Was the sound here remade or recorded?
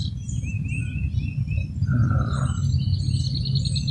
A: recorded